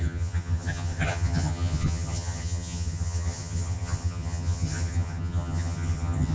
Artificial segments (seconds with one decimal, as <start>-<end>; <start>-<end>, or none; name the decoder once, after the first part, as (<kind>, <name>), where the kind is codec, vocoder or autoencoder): 0.0-6.3 (vocoder, HiFi-GAN)